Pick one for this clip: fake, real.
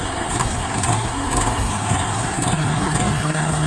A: fake